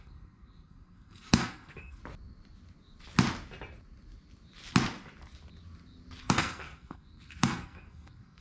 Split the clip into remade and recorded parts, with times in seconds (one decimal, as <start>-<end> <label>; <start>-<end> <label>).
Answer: 0.0-2.0 remade; 2.0-6.2 recorded; 6.2-8.4 remade